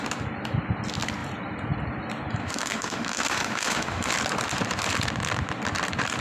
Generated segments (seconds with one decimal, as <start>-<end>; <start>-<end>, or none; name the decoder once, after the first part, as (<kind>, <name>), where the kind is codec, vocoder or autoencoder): 2.4-4.1 (autoencoder, DAC-VAE)